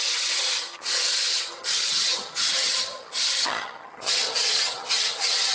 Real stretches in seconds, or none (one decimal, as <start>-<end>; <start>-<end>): none